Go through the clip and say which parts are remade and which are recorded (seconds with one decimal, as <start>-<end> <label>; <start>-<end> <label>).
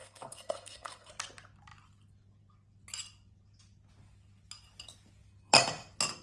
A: 0.0-1.1 remade; 1.1-6.2 recorded